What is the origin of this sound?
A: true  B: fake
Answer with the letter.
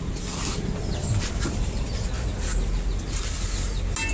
A